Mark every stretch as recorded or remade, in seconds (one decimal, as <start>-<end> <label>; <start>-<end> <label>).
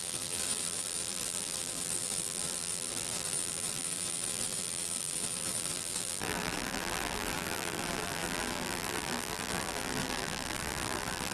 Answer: 0.0-11.3 remade